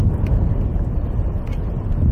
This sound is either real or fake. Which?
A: real